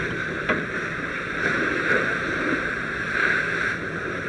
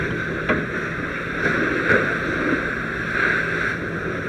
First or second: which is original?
second